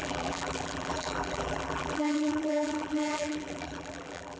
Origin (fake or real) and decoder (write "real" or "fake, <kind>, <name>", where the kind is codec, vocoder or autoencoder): fake, vocoder, BigVGAN v2